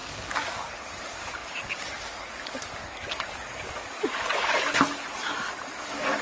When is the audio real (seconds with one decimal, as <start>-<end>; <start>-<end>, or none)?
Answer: none